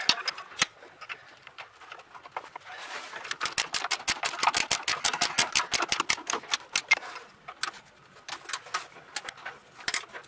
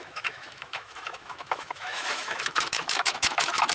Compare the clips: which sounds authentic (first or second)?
first